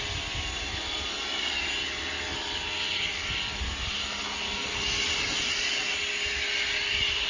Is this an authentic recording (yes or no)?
yes